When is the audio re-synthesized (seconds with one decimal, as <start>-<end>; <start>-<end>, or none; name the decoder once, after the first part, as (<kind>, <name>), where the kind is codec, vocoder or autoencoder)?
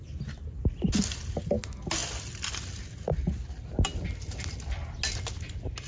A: none